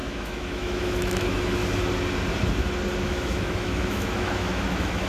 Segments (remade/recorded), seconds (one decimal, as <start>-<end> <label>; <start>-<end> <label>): 0.0-1.6 remade; 1.6-3.0 recorded; 3.0-5.1 remade